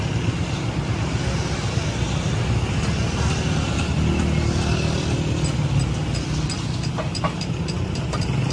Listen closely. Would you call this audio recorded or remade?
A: recorded